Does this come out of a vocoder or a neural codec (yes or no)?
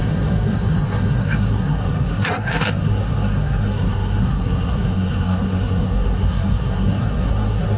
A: yes